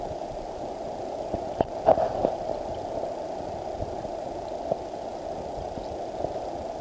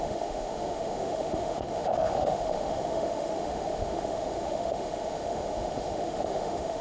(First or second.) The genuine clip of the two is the first